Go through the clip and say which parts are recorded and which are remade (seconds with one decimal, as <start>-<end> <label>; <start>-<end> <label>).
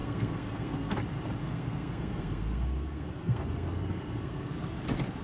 0.0-0.9 remade; 0.9-1.4 recorded; 1.4-4.5 remade; 4.5-5.2 recorded